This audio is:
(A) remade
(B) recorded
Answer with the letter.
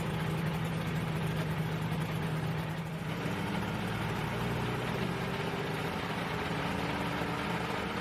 B